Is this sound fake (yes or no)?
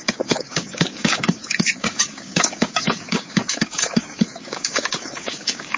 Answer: yes